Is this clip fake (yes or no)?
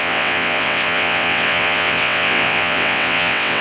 yes